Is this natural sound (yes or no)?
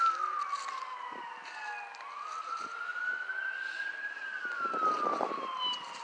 yes